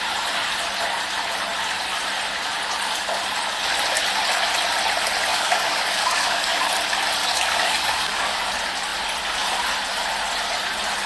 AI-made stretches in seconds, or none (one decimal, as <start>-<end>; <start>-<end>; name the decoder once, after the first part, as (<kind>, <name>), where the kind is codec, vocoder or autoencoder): 5.3-6.7 (codec, DAC); 7.2-8.4